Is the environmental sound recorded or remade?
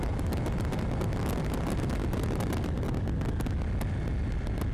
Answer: recorded